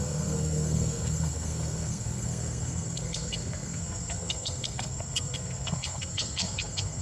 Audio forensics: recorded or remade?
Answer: remade